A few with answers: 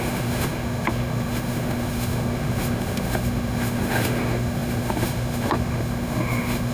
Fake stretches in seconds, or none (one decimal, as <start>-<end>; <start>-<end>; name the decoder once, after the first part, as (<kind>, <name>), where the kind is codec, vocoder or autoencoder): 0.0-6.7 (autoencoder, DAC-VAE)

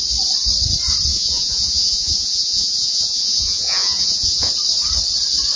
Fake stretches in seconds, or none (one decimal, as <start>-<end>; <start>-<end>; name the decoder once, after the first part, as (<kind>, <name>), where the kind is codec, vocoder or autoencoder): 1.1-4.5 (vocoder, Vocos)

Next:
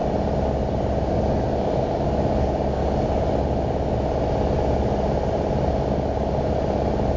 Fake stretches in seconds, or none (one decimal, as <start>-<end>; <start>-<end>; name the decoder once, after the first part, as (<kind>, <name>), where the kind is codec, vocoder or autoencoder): 1.1-2.8 (codec, DAC)

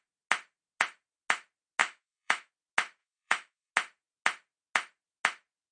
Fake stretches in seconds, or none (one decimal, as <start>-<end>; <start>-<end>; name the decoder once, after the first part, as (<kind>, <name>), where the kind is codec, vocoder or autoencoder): 1.8-2.5 (autoencoder, DAC-VAE); 3.0-3.7

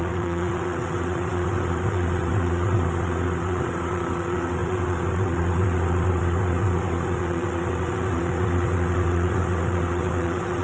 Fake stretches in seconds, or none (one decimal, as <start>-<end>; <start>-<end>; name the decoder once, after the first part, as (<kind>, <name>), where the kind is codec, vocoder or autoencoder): 0.0-10.6 (vocoder, WaveNeXt)

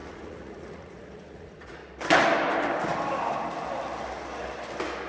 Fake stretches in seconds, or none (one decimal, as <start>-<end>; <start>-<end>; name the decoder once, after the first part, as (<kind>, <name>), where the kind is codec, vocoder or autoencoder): 0.0-1.8 (vocoder, Vocos)

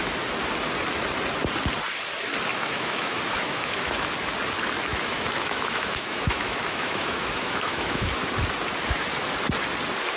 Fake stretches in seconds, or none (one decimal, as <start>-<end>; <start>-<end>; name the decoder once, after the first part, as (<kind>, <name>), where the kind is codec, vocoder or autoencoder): 2.5-4.1 (autoencoder, DAC-VAE); 4.9-8.1

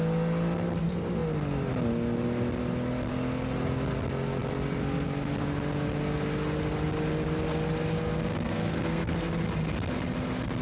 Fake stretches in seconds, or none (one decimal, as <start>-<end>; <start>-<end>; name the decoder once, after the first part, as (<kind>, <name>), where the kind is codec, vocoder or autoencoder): 8.3-9.1 (codec, SNAC)